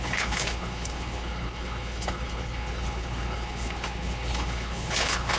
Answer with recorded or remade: remade